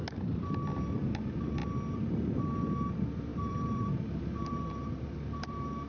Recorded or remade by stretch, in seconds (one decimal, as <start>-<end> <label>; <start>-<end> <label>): 0.0-3.3 recorded; 3.3-5.9 remade